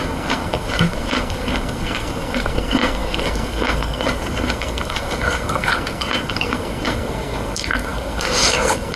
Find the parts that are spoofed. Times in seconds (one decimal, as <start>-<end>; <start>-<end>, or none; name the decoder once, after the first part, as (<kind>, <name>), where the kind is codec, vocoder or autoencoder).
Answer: 0.0-9.0 (codec, SNAC)